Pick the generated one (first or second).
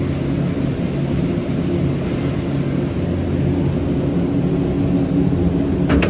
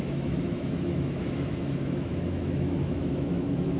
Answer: second